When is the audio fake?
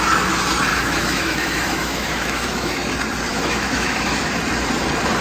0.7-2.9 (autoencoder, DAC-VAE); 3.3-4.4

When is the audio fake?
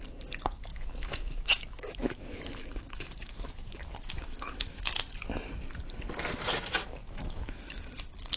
0.7-4.8 (autoencoder, DAC-VAE); 7.0-7.9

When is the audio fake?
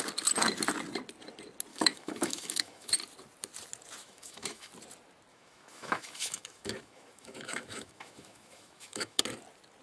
1.7-2.9 (autoencoder, DAC-VAE); 4.0-4.7; 5.3-9.2